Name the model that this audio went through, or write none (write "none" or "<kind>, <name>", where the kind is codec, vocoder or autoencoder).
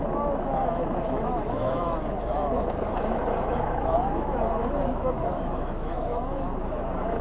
autoencoder, DAC-VAE